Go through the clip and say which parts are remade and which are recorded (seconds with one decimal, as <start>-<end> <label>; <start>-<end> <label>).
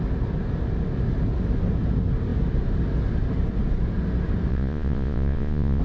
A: 0.0-4.5 recorded; 4.5-5.8 remade